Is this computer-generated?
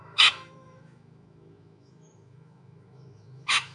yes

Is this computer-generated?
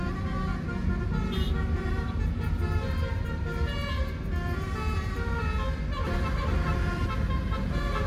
no